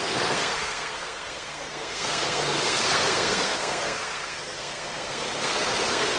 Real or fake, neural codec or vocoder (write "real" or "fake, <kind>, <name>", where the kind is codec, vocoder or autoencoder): fake, codec, SNAC